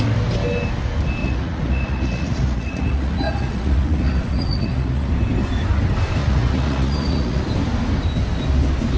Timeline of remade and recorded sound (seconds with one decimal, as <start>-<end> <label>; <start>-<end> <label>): 0.0-1.2 recorded; 1.2-5.1 remade; 5.1-6.2 recorded; 6.2-7.4 remade; 7.4-9.0 recorded